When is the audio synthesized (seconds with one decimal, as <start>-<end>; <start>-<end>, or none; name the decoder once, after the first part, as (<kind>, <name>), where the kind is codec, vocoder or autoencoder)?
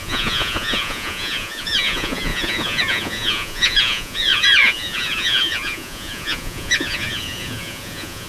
0.0-8.3 (vocoder, Vocos)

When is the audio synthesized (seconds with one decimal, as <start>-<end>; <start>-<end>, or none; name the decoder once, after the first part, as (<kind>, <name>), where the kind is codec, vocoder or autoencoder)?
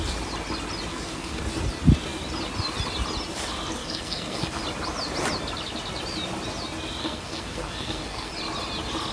0.9-1.4 (codec, SNAC); 3.8-4.6; 7.0-8.3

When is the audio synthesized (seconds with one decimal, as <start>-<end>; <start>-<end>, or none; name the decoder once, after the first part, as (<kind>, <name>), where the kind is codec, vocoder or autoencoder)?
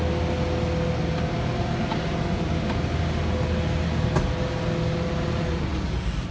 none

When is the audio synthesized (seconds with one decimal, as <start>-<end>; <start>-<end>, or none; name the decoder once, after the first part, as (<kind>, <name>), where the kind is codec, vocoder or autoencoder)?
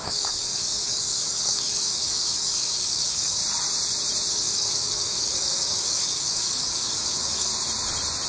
0.0-3.4 (codec, DAC); 4.3-7.5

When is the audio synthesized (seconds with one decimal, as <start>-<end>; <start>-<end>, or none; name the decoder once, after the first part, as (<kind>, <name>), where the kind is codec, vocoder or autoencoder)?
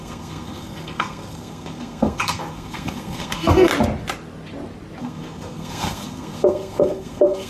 0.0-3.7 (codec, SNAC); 5.0-7.5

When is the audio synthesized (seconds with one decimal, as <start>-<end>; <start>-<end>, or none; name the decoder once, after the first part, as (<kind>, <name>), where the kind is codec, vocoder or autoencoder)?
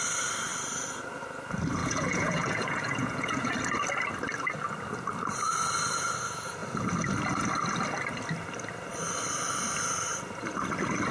1.8-3.5 (vocoder, Vocos)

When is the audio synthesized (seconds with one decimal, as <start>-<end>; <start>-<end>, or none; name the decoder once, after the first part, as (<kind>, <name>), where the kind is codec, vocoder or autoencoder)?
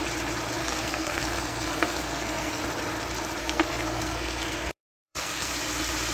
0.6-2.6 (codec, SNAC); 3.4-5.5